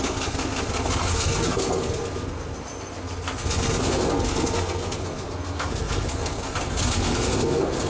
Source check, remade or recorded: remade